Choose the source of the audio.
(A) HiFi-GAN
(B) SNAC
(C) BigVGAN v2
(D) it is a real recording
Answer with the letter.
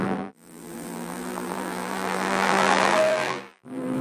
C